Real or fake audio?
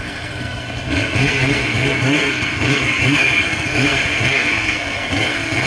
fake